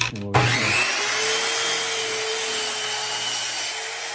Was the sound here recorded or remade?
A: recorded